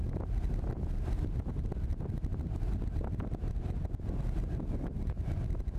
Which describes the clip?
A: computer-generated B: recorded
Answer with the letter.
B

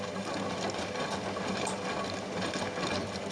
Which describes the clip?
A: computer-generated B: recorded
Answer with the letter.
B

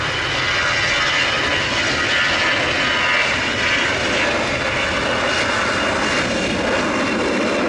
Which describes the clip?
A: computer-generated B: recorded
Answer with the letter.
B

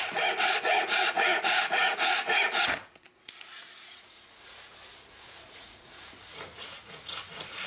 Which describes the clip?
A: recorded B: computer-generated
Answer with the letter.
B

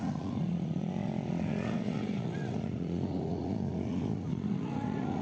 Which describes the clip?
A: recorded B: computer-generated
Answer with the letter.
B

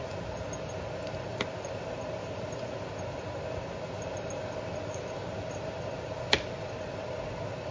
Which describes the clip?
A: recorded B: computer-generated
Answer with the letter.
A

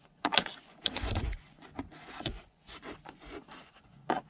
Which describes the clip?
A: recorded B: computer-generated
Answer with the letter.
B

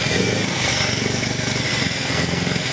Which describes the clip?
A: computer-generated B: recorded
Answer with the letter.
A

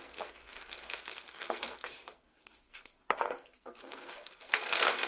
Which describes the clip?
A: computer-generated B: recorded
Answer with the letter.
A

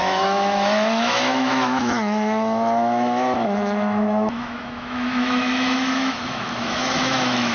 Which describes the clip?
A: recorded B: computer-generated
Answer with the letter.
B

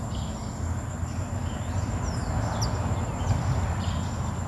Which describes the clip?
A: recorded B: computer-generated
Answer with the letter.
A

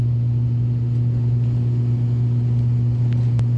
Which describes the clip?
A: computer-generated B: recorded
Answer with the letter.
B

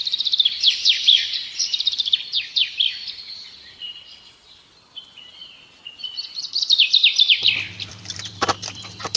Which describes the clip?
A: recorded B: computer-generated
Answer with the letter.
B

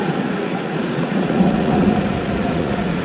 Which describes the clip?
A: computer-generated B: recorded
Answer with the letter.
A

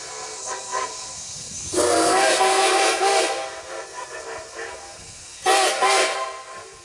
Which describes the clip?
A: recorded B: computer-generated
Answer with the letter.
B